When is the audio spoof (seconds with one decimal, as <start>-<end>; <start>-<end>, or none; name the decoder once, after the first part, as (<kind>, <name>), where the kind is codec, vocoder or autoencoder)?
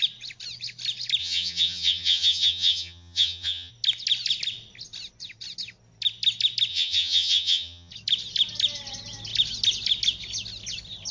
1.2-3.7 (vocoder, HiFi-GAN); 6.7-7.9